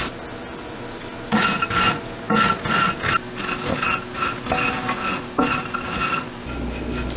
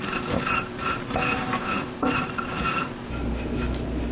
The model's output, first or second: second